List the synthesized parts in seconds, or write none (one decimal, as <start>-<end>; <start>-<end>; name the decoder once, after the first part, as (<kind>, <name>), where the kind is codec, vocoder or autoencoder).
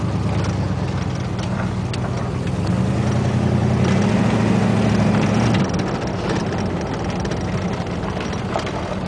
none